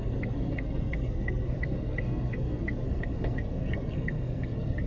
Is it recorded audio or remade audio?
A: remade